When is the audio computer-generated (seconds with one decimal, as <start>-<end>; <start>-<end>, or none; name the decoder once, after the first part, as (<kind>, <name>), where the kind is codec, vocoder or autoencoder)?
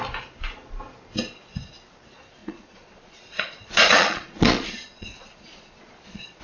2.4-6.4 (vocoder, Vocos)